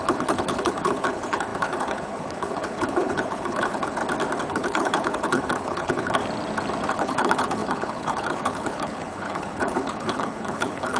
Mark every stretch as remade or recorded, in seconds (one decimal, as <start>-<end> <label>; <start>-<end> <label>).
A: 0.0-4.0 remade; 4.0-4.5 recorded; 4.5-6.2 remade; 6.2-6.9 recorded; 6.9-11.0 remade